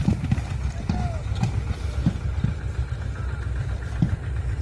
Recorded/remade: recorded